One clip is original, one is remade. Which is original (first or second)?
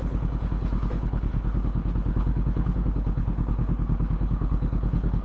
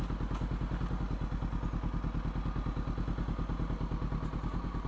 second